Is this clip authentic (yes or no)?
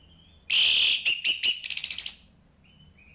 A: yes